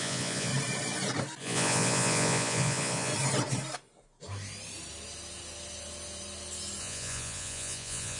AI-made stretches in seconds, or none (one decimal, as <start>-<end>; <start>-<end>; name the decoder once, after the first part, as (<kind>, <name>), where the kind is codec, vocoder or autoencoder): 0.0-0.5 (vocoder, Vocos); 1.4-3.1; 6.8-8.2